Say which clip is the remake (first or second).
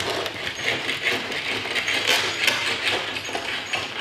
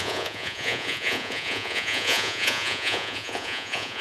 second